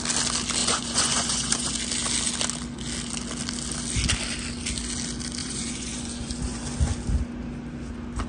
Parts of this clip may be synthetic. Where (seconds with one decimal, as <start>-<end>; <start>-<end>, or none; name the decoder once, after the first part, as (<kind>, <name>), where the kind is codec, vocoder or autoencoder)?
0.6-1.7 (vocoder, Vocos); 5.4-6.6

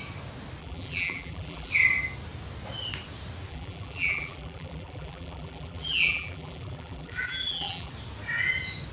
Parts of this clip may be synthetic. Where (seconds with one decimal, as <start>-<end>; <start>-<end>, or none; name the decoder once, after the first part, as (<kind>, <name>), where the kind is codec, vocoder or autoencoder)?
0.6-1.7 (vocoder, BigVGAN v2); 3.5-7.9

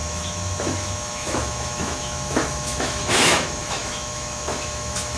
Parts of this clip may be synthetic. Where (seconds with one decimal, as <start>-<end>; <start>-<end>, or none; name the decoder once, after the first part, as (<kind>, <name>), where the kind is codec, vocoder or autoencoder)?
0.0-5.2 (autoencoder, DAC-VAE)

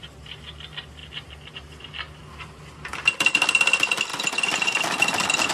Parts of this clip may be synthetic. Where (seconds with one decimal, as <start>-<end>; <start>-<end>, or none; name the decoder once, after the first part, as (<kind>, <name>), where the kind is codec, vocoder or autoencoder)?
2.9-3.5 (vocoder, BigVGAN v2); 4.1-5.5

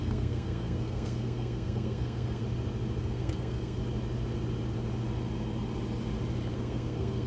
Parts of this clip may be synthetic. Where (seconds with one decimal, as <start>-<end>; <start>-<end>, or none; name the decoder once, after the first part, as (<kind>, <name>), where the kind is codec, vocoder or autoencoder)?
0.0-2.4 (codec, SNAC); 3.0-3.8; 6.5-7.3

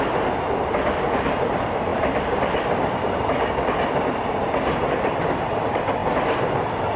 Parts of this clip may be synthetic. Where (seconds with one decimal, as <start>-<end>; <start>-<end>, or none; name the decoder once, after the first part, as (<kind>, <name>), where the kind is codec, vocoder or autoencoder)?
1.9-5.2 (vocoder, BigVGAN v2)

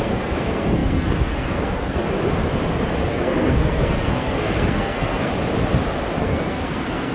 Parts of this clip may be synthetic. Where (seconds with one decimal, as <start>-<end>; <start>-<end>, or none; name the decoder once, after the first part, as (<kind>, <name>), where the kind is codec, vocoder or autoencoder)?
0.0-2.0 (codec, SNAC); 3.1-5.3; 6.2-7.1